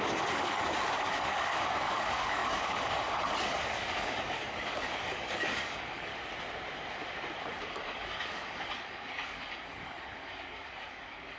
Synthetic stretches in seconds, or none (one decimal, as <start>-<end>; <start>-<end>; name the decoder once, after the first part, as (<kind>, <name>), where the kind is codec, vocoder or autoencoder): 0.0-6.1 (codec, DAC); 7.5-11.4